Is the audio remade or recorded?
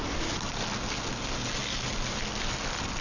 recorded